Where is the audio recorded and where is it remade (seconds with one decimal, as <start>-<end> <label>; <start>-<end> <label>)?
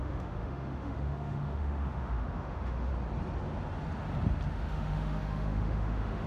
0.0-2.9 remade; 2.9-4.5 recorded; 4.5-6.3 remade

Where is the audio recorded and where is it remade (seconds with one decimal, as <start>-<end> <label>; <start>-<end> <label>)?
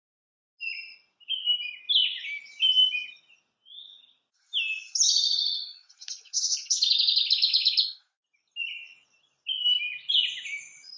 0.0-11.0 recorded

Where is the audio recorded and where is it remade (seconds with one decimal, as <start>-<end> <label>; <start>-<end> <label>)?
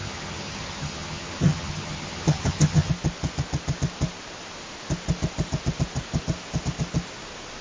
0.0-2.9 remade; 2.9-7.6 recorded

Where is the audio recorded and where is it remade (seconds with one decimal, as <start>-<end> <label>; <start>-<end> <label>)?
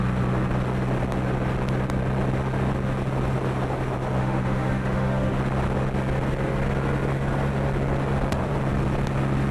0.0-4.2 recorded; 4.2-5.4 remade; 5.4-9.5 recorded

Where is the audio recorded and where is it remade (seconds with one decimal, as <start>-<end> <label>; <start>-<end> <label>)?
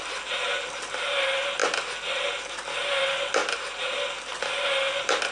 0.0-5.3 recorded